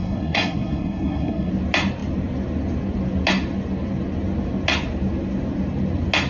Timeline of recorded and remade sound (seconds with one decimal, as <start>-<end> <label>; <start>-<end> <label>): 0.0-1.5 remade; 1.5-6.3 recorded